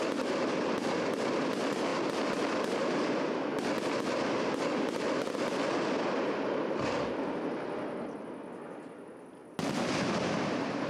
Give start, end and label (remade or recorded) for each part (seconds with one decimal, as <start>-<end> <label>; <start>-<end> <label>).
0.0-10.9 recorded